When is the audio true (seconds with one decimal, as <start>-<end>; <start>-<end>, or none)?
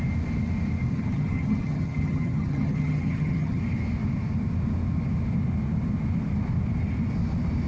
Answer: 0.0-0.9; 3.6-7.7